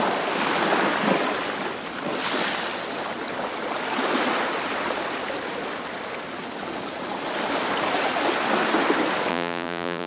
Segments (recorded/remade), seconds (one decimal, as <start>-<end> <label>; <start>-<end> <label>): 0.0-9.3 recorded; 9.3-10.1 remade